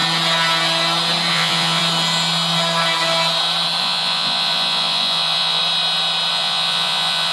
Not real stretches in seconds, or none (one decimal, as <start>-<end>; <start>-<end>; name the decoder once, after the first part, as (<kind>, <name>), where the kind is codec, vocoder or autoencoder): 1.3-1.8 (vocoder, Vocos); 3.8-5.6; 6.3-7.3